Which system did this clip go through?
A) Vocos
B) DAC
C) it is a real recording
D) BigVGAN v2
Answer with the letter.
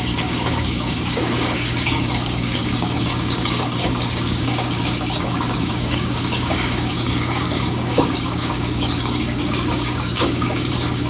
B